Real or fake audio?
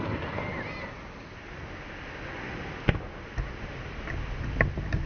real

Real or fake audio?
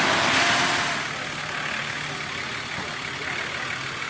real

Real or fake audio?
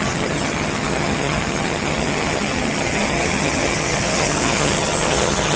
fake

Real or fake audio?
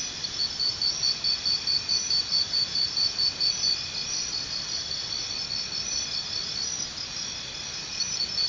real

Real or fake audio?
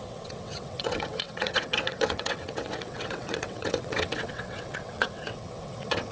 fake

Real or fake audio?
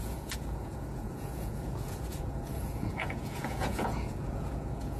fake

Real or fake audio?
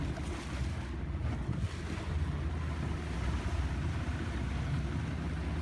real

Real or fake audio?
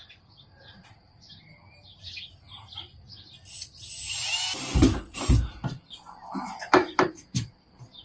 real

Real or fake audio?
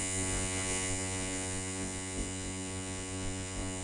fake